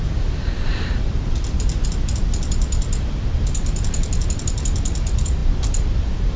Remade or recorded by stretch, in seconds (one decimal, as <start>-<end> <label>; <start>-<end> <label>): 0.0-6.4 recorded